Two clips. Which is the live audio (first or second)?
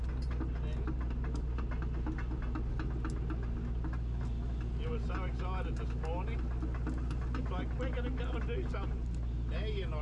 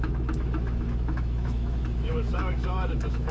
first